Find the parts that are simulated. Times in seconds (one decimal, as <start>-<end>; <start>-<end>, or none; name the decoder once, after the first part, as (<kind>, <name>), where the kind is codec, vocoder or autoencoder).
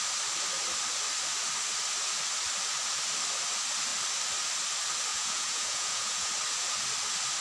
5.1-6.3 (vocoder, Vocos)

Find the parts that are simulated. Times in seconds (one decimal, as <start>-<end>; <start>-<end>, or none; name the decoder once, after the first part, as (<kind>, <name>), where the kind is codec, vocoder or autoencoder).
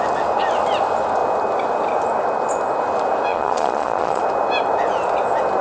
3.3-4.2 (vocoder, Vocos)